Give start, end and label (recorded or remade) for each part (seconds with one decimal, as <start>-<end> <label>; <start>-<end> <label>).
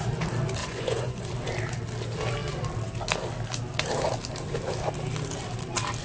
0.0-0.6 recorded; 0.6-1.2 remade; 1.2-6.0 recorded